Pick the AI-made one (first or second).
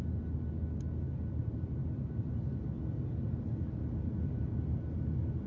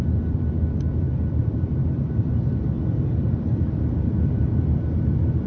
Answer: second